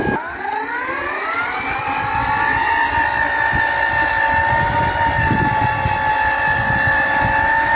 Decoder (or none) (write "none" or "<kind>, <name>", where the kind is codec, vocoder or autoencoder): none